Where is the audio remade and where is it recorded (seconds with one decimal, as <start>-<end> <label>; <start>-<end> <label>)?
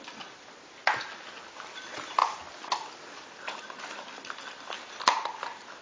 0.0-5.8 recorded